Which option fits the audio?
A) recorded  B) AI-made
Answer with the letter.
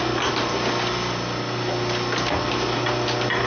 A